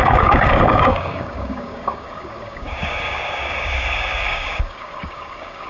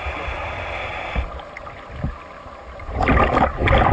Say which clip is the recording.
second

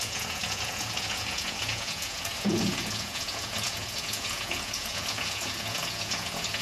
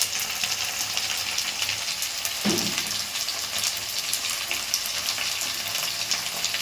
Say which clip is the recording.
second